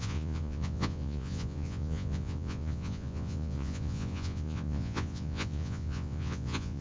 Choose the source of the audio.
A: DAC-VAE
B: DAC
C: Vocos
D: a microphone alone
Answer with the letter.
C